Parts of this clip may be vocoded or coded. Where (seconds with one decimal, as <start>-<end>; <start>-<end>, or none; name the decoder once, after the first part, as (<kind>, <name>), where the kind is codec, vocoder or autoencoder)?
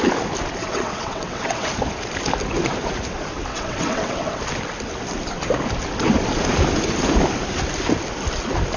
0.6-1.7 (vocoder, WaveNeXt); 3.5-4.4